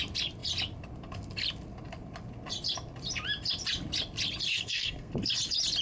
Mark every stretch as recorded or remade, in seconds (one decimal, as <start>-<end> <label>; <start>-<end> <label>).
0.0-4.5 recorded; 4.5-5.1 remade; 5.1-5.8 recorded